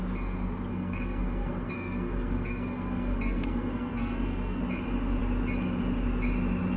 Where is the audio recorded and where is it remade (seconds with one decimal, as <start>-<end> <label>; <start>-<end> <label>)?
0.0-0.7 recorded; 0.7-4.6 remade; 4.6-6.8 recorded